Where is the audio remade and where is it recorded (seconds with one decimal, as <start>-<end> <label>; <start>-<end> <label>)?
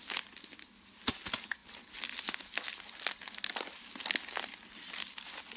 0.0-5.6 recorded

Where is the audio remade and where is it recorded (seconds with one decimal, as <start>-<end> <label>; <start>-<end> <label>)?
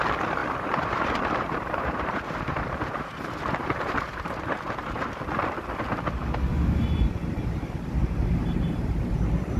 0.0-0.4 recorded; 0.4-5.1 remade; 5.1-8.0 recorded; 8.0-9.1 remade; 9.1-9.6 recorded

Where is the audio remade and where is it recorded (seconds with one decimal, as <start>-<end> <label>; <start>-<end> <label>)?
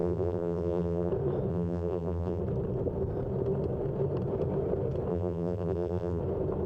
0.0-1.1 remade; 1.1-1.5 recorded; 1.5-2.4 remade; 2.4-5.1 recorded; 5.1-6.2 remade; 6.2-6.7 recorded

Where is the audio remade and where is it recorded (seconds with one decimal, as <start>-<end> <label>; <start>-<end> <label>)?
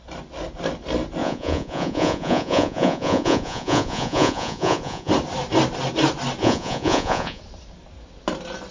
0.0-1.2 recorded; 1.2-5.1 remade; 5.1-6.4 recorded; 6.4-7.4 remade; 7.4-8.7 recorded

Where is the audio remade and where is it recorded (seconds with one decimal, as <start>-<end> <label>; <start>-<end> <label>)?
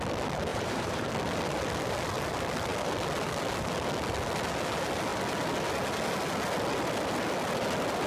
0.0-0.5 recorded; 0.5-1.1 remade; 1.1-8.1 recorded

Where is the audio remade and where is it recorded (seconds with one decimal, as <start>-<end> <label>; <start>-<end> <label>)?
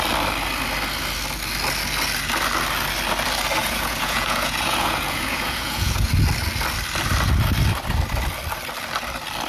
0.0-3.6 recorded; 3.6-6.1 remade; 6.1-9.5 recorded